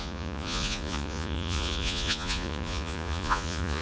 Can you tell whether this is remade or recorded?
remade